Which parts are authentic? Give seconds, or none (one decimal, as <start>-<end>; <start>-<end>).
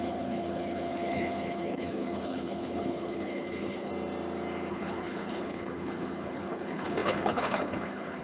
3.9-4.7